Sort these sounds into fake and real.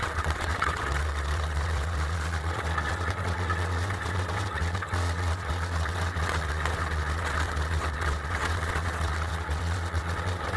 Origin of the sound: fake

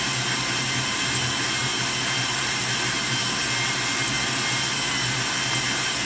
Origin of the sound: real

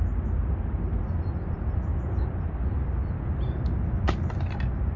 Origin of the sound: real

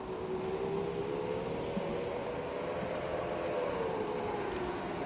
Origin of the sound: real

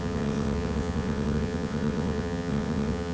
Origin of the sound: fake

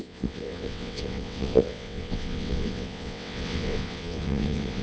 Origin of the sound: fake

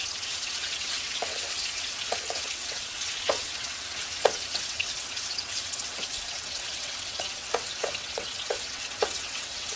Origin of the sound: fake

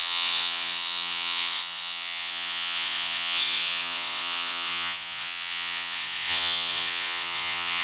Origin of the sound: fake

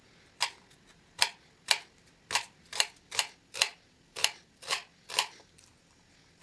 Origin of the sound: real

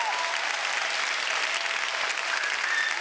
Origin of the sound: real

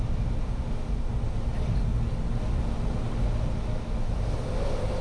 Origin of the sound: real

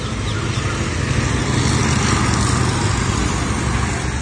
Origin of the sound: real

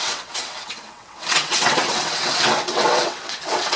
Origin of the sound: fake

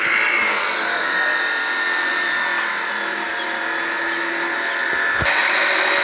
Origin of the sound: real